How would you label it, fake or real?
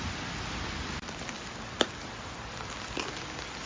real